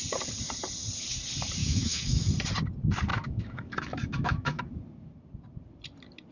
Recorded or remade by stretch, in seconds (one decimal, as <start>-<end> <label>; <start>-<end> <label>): 0.0-1.6 recorded; 1.6-2.3 remade; 2.3-3.1 recorded; 3.1-4.6 remade; 4.6-6.3 recorded